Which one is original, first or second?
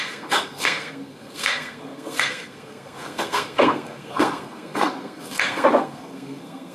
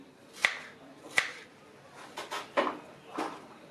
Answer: second